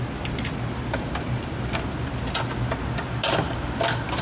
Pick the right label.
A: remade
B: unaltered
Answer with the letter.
B